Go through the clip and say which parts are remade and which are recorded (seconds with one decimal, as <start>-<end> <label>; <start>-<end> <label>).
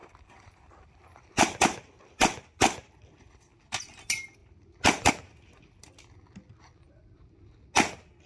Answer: 0.0-3.0 remade; 3.0-8.3 recorded